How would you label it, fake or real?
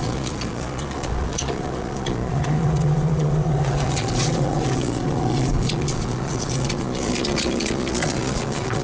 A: fake